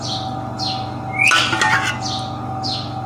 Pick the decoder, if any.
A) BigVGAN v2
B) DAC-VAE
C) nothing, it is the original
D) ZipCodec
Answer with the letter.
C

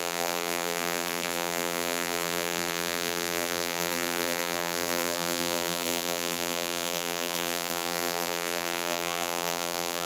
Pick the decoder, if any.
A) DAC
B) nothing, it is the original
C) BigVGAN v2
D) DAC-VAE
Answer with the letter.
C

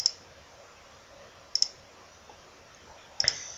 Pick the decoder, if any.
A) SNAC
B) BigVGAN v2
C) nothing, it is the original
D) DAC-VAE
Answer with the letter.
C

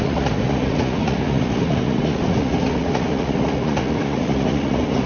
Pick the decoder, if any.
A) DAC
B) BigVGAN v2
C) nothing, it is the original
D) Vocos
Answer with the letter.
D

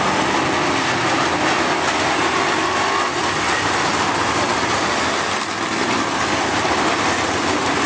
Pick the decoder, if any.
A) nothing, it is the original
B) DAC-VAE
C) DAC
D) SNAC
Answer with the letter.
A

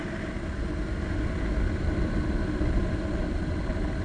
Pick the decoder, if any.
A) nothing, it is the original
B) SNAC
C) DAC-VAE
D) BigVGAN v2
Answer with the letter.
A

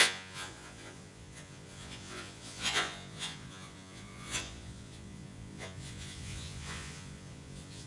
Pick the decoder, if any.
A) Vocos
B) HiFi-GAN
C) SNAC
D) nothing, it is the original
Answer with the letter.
A